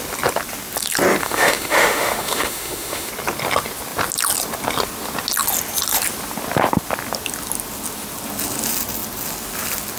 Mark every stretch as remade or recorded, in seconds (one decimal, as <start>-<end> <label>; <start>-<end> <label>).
0.0-1.2 recorded; 1.2-3.1 remade; 3.1-10.0 recorded